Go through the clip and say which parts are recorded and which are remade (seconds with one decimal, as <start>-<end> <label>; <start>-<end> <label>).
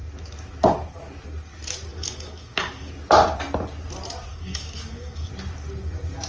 0.0-1.9 recorded; 1.9-2.9 remade; 2.9-4.3 recorded; 4.3-5.3 remade; 5.3-6.3 recorded